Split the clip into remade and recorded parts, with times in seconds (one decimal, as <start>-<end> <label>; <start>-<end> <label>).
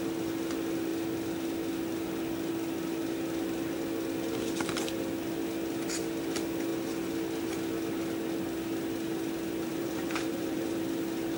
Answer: 0.0-9.7 recorded; 9.7-10.8 remade; 10.8-11.4 recorded